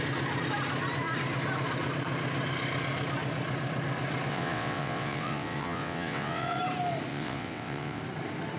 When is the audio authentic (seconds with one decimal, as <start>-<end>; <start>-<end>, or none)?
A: 0.0-4.3; 6.6-7.1; 8.0-8.6